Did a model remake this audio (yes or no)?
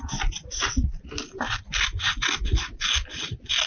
no